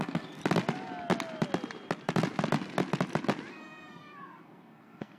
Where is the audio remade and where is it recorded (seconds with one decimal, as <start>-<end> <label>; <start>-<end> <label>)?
0.0-0.4 remade; 0.4-3.5 recorded; 3.5-5.2 remade